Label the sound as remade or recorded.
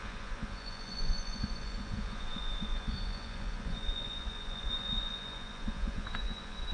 remade